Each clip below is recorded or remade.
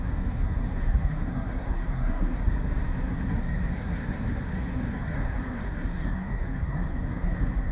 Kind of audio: remade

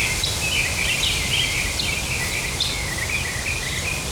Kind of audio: recorded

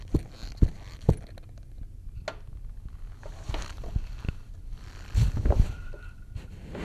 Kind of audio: recorded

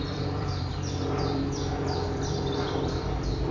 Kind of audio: remade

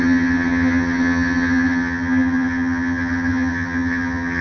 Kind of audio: remade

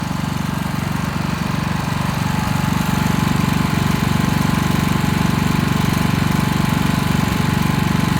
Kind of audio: remade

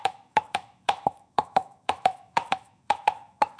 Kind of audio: remade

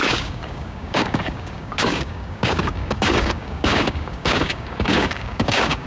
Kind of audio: remade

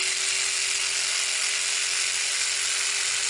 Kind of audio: recorded